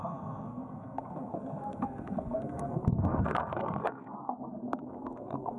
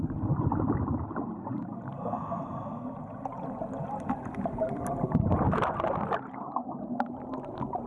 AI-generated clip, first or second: first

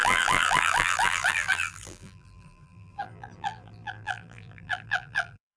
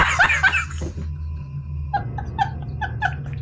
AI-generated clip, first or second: first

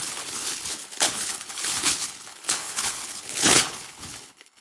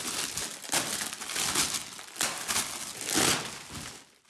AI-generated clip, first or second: first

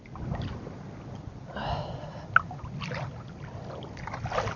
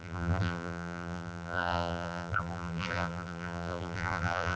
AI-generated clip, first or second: second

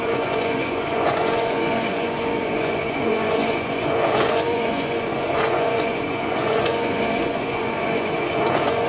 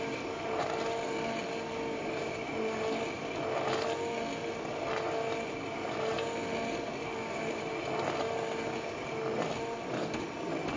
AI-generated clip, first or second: first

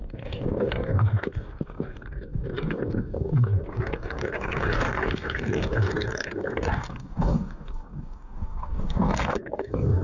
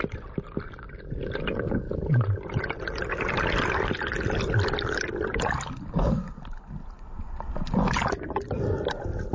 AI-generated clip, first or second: first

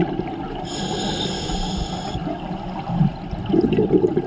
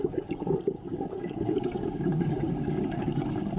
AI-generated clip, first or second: second